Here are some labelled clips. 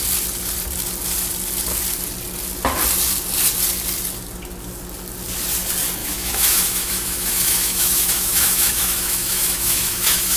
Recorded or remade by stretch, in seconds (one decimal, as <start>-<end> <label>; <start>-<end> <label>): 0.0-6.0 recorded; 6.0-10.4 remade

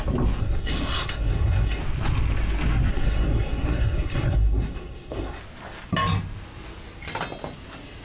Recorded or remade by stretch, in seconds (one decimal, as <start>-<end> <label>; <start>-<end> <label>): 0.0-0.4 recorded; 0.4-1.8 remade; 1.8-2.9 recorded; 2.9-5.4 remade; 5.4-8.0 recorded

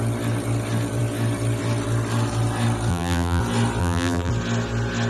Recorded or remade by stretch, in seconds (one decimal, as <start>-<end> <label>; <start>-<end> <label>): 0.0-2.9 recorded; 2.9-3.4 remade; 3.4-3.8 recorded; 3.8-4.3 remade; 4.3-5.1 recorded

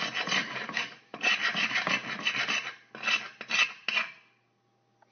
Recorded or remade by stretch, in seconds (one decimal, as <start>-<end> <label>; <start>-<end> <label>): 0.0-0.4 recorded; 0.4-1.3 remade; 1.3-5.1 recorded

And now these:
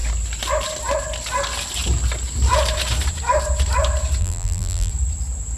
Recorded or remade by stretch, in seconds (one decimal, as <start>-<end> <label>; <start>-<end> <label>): 0.0-4.2 recorded; 4.2-4.9 remade; 4.9-5.6 recorded

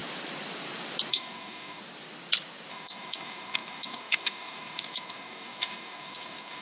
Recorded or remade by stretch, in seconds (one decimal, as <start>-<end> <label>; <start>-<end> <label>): 0.0-1.1 recorded; 1.1-1.8 remade; 1.8-2.7 recorded; 2.7-6.6 remade

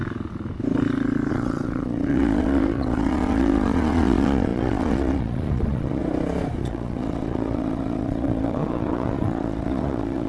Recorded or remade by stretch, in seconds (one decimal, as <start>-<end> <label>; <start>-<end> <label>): 0.0-1.3 recorded; 1.3-6.0 remade; 6.0-6.6 recorded; 6.6-10.3 remade

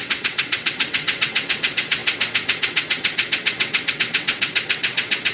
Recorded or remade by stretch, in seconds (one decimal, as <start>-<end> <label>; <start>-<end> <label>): 0.0-5.3 remade